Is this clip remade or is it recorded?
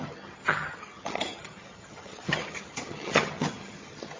remade